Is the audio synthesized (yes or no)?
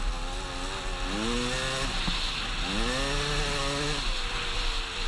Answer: no